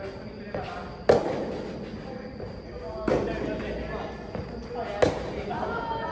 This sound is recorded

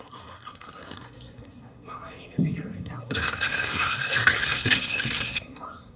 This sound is remade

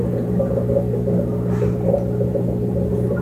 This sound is recorded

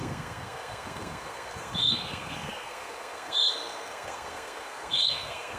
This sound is remade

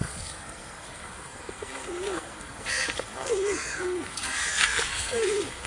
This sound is remade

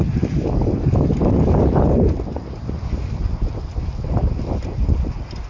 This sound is recorded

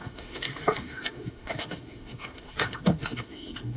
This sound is remade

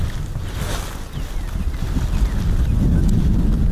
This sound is recorded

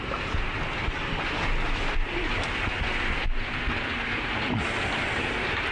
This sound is recorded